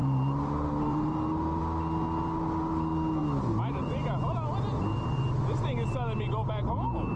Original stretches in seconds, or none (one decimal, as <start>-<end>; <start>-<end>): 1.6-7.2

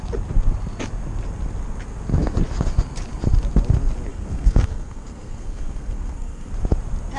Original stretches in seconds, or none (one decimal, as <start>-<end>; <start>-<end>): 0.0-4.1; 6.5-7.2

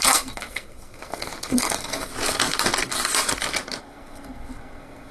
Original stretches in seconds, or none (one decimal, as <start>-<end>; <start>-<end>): 2.1-3.8